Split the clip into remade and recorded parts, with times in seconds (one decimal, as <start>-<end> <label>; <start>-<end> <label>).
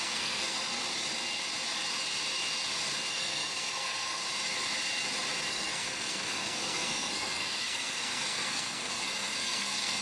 0.0-0.8 remade; 0.8-3.1 recorded; 3.1-4.2 remade; 4.2-5.5 recorded; 5.5-10.0 remade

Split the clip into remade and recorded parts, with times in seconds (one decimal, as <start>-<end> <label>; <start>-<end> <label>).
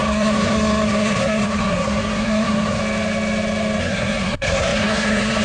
0.0-2.8 remade; 2.8-3.8 recorded; 3.8-5.4 remade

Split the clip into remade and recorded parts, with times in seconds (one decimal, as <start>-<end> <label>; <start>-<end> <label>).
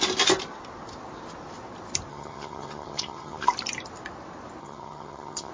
0.0-2.1 recorded; 2.1-3.5 remade; 3.5-4.6 recorded; 4.6-5.5 remade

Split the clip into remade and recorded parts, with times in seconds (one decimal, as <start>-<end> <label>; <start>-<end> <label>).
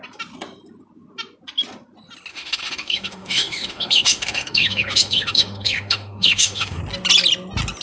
0.0-2.3 recorded; 2.3-6.8 remade; 6.8-7.8 recorded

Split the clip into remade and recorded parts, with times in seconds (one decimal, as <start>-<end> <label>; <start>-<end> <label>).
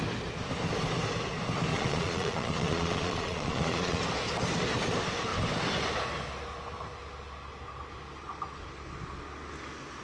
0.0-1.7 recorded; 1.7-4.0 remade; 4.0-10.0 recorded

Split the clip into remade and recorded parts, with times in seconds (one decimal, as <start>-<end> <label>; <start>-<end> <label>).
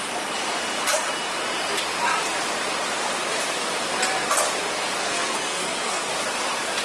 0.0-5.0 recorded; 5.0-6.1 remade; 6.1-6.8 recorded